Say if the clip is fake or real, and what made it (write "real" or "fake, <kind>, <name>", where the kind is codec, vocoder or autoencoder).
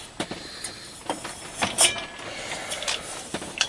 real